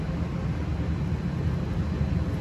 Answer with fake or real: real